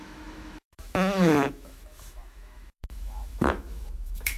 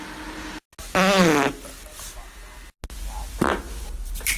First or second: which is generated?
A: first